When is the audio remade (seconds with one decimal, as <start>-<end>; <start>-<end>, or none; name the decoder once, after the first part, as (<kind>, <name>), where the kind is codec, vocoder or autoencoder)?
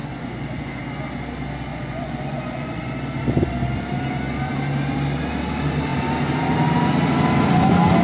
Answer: 0.0-0.8 (vocoder, Vocos); 1.7-2.9